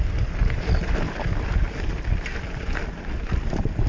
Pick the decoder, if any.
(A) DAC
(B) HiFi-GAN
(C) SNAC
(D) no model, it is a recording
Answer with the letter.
D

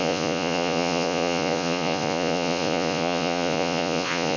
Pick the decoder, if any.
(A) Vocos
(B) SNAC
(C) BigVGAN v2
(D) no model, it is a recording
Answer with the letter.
A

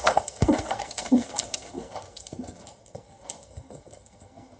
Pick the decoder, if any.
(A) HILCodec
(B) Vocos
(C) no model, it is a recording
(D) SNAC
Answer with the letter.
D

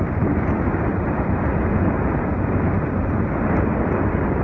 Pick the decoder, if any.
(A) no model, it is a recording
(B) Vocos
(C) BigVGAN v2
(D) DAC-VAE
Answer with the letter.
A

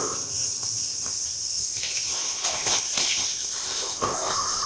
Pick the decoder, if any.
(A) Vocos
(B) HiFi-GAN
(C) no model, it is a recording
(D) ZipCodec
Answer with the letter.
D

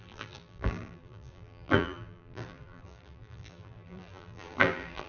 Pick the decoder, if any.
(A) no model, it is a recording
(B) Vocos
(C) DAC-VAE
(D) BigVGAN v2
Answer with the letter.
D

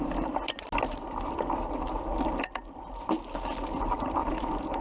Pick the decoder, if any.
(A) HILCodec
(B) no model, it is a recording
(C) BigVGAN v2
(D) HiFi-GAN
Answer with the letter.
B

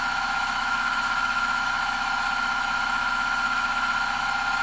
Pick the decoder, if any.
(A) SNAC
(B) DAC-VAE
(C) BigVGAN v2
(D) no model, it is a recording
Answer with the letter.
B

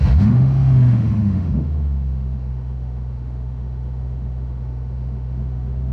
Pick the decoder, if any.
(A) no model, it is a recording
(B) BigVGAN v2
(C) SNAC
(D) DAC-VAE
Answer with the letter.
D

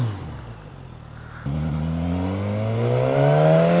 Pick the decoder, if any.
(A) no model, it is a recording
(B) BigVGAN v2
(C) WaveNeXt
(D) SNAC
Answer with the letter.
A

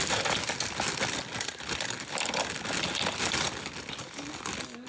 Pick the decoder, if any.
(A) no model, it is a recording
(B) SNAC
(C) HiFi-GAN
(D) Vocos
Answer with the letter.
A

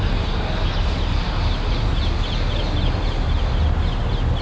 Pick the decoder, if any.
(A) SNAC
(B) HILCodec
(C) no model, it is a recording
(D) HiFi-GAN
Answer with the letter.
C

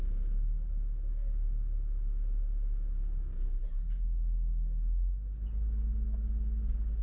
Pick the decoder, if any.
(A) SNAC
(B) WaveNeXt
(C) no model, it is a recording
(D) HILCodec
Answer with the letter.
C